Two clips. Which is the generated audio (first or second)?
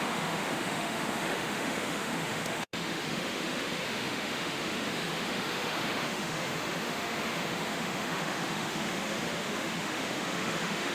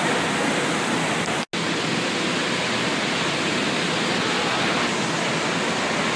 first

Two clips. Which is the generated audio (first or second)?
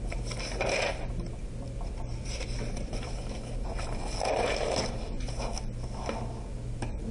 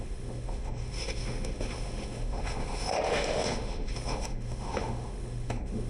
second